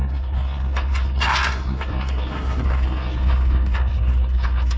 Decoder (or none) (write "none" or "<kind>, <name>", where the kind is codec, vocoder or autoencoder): codec, SNAC